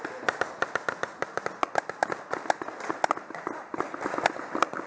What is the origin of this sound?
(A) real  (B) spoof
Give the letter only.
A